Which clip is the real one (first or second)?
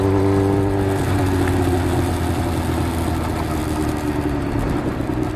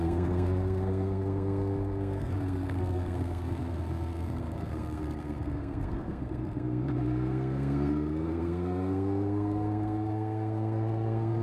first